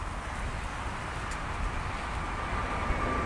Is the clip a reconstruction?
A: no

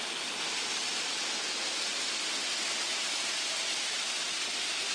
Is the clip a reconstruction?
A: no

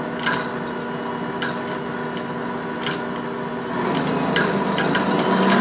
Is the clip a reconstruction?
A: no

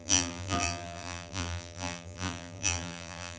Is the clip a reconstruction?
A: yes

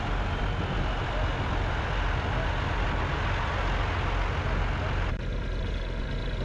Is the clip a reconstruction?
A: no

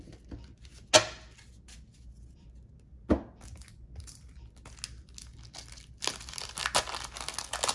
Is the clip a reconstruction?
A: no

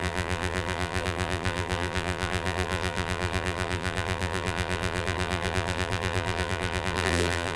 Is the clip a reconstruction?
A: yes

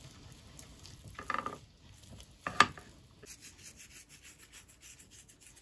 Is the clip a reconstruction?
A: no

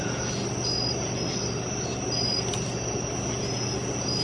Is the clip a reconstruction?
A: no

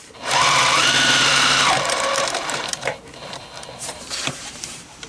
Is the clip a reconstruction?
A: yes